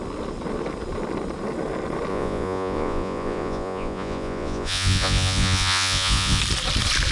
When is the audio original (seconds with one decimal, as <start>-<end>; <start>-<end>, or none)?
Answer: 0.0-2.1; 6.4-7.1